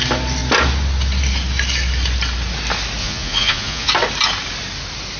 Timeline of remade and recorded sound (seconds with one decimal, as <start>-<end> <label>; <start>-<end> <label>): 0.0-3.0 recorded; 3.0-3.9 remade; 3.9-5.2 recorded